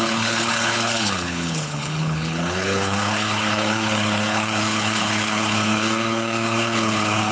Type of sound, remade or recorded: remade